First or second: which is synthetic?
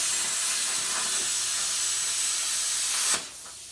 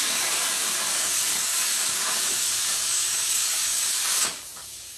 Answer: second